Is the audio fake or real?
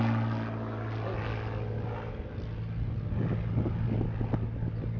real